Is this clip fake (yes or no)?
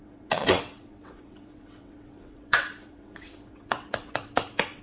yes